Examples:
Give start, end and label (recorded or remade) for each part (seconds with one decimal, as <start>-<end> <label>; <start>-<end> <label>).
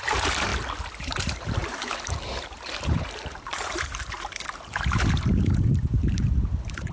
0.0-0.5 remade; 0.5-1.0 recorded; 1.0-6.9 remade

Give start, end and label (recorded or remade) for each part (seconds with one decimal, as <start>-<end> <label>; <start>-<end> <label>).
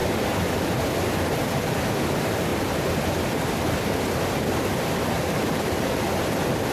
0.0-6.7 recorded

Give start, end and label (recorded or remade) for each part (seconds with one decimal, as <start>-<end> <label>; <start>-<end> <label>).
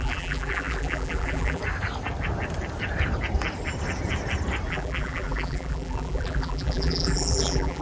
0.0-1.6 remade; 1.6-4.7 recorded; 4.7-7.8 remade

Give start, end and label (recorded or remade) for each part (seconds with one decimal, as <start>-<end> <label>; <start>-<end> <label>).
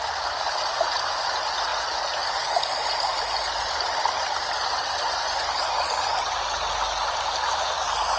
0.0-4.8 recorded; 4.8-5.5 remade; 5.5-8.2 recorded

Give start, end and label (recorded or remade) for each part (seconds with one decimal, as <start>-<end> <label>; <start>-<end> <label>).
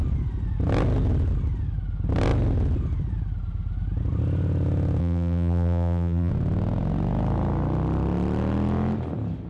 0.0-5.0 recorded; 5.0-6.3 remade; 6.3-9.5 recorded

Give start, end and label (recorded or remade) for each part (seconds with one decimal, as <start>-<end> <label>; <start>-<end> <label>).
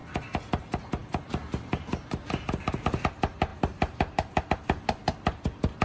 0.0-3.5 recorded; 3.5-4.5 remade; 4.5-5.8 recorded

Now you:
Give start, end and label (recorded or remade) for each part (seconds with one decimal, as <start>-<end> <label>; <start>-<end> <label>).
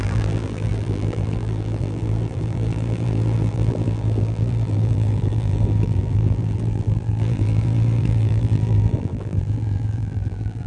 0.0-10.7 remade